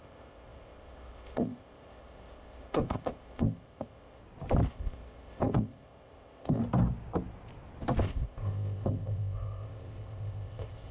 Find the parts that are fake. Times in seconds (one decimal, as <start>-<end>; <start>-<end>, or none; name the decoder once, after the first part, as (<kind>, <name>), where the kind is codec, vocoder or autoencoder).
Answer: 0.0-4.2 (codec, ZipCodec); 4.7-6.6; 8.0-10.9